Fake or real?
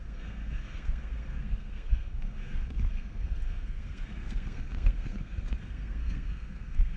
fake